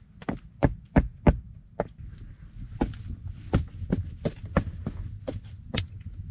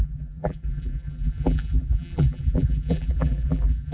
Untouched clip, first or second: first